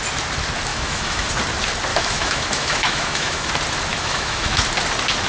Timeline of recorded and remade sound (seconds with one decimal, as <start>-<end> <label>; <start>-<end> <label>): 0.0-0.7 recorded; 0.7-1.3 remade; 1.3-1.9 recorded; 1.9-3.5 remade; 3.5-3.9 recorded; 3.9-4.6 remade; 4.6-5.3 recorded